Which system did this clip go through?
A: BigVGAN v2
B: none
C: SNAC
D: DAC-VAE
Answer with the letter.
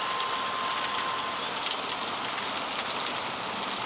B